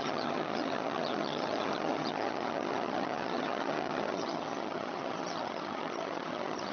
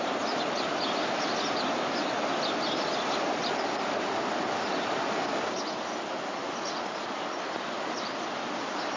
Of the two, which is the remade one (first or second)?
first